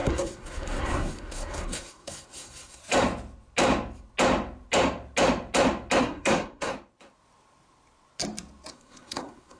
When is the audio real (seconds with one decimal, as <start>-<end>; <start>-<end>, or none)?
2.8-6.0; 6.7-8.7